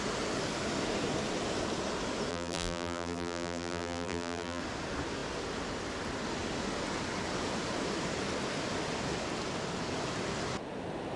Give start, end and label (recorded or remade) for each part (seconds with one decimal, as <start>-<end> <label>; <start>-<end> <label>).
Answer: 0.0-2.3 recorded; 2.3-4.6 remade; 4.6-11.2 recorded